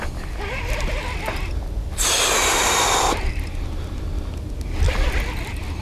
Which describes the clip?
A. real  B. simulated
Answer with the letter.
A